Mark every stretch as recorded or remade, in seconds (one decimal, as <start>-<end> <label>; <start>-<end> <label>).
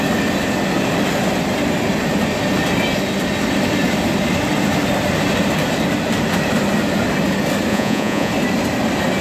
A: 0.0-7.7 recorded; 7.7-8.3 remade; 8.3-9.2 recorded